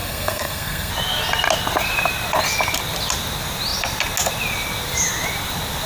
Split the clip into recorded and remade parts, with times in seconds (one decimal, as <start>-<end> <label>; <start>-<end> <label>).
0.0-0.9 remade; 0.9-5.9 recorded